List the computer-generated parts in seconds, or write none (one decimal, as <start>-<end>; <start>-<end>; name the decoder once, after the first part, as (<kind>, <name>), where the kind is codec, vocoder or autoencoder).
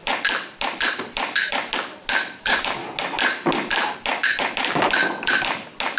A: 2.4-2.8 (codec, DAC)